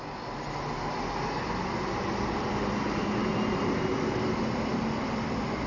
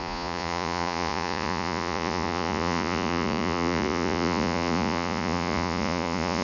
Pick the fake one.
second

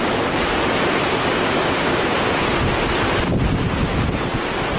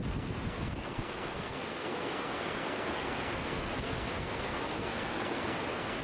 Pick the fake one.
second